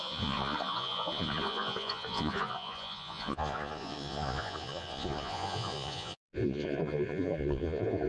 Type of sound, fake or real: fake